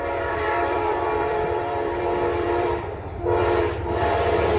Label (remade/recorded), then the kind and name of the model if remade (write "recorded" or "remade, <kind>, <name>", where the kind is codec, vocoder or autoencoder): remade, vocoder, BigVGAN v2